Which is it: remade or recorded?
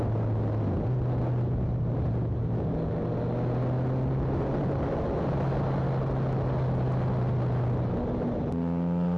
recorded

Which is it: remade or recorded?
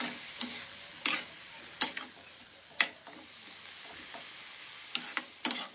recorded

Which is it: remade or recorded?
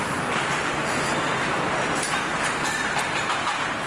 remade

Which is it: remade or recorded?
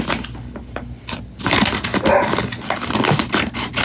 recorded